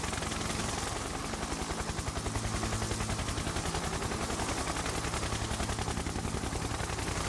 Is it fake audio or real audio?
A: real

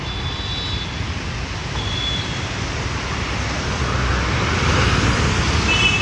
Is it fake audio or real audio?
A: real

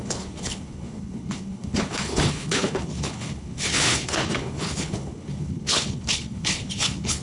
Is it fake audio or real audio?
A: fake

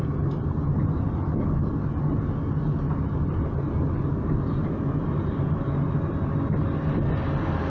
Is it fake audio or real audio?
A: real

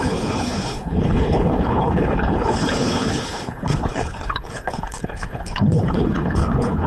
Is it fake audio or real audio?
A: fake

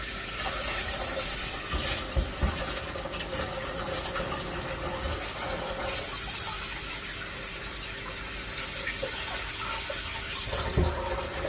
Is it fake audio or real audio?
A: real